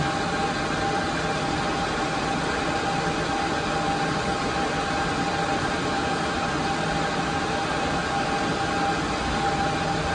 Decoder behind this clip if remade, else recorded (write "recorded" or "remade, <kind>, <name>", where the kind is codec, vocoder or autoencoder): recorded